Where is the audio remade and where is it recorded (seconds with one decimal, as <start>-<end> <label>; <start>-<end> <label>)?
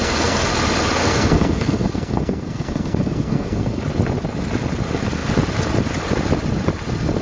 0.0-0.5 remade; 0.5-1.0 recorded; 1.0-3.8 remade; 3.8-7.2 recorded